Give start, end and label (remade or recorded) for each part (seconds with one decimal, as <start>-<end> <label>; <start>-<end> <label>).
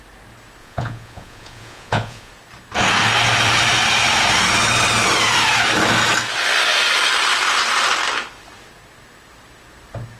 0.0-0.6 recorded; 0.6-2.3 remade; 2.3-10.2 recorded